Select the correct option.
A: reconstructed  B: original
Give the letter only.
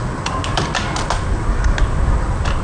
B